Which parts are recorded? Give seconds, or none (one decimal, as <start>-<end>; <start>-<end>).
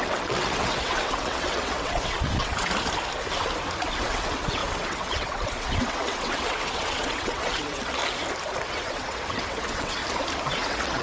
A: 2.7-4.0; 8.0-8.6; 10.0-10.5